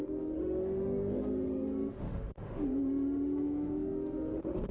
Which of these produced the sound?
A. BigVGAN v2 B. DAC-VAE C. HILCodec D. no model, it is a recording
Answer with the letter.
B